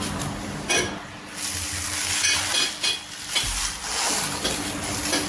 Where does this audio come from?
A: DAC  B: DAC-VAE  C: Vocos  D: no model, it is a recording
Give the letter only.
D